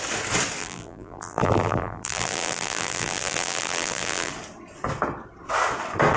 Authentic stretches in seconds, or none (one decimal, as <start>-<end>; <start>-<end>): 0.0-0.6; 4.3-6.2